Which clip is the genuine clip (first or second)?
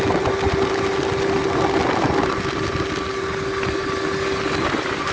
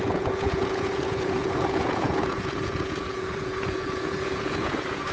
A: first